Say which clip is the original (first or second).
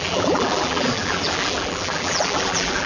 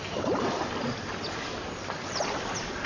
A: second